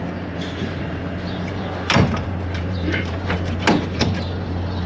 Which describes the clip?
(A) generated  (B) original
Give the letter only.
A